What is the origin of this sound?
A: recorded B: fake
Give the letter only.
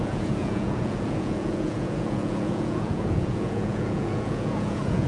B